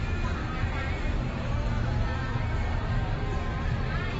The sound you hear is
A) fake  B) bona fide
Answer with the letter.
B